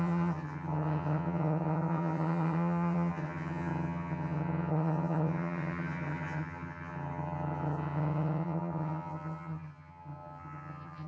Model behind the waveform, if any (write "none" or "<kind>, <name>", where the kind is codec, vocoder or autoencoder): vocoder, HiFi-GAN